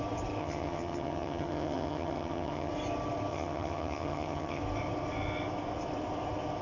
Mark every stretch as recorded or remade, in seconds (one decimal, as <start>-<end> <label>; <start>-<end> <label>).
0.0-0.4 recorded; 0.4-2.7 remade; 2.7-3.3 recorded; 3.3-4.6 remade; 4.6-6.6 recorded